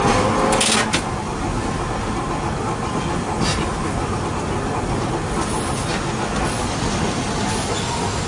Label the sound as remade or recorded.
recorded